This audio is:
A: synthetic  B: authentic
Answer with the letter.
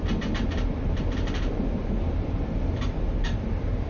B